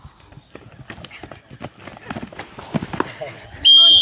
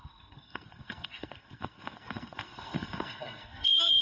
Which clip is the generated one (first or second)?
second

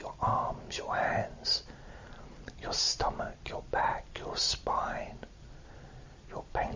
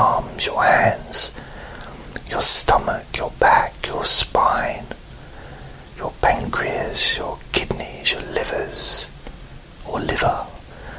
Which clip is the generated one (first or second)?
first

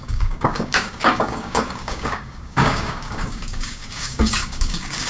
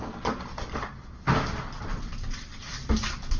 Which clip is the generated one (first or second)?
first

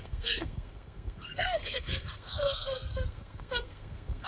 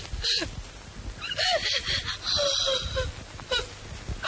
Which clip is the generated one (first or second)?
first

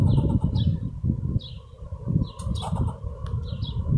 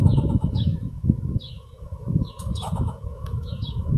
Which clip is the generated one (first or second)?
second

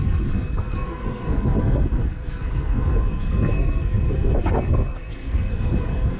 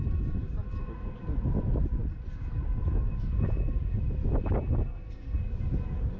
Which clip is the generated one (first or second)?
first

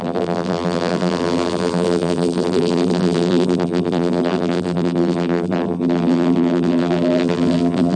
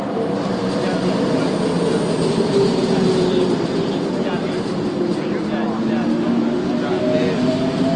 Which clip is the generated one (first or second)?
first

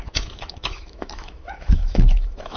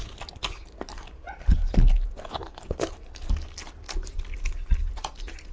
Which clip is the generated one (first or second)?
first